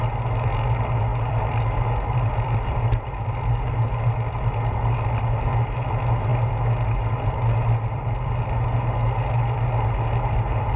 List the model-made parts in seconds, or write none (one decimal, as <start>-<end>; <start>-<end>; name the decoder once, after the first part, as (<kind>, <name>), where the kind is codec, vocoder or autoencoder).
none